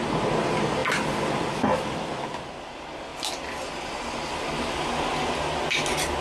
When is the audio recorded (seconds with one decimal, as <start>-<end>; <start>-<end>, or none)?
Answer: 0.0-6.2